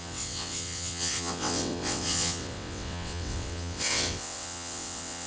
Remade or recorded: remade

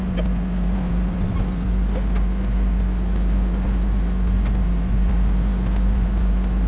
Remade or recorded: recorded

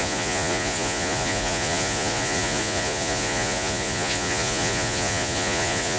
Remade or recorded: remade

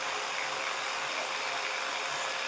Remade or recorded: recorded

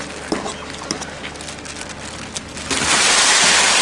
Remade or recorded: recorded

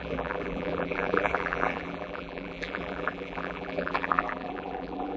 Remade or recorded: remade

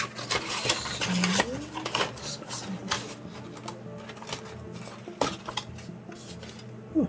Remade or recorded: recorded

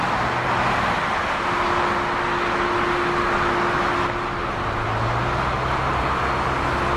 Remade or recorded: recorded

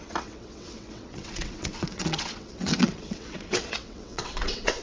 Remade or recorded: remade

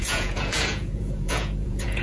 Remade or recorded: remade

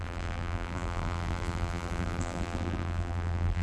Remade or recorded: remade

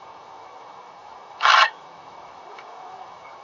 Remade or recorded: remade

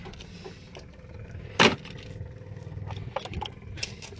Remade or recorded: recorded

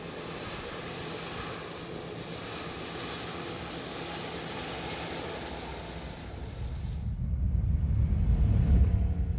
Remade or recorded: recorded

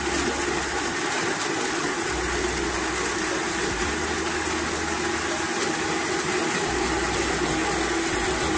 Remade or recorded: recorded